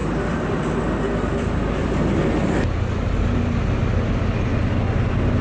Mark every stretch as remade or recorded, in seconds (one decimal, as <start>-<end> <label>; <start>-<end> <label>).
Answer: 0.0-5.4 recorded